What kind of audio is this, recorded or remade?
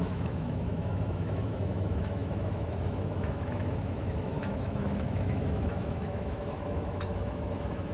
remade